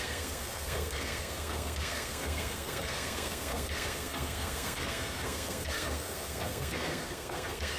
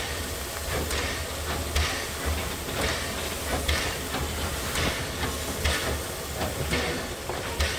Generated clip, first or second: first